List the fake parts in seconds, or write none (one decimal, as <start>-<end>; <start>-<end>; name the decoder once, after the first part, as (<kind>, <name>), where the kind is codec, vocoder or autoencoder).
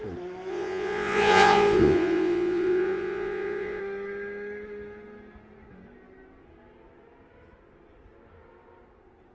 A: 0.5-3.8 (vocoder, Vocos)